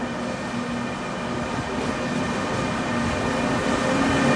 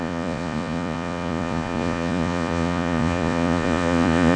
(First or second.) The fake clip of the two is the second